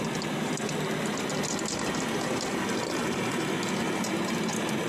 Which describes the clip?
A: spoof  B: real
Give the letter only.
B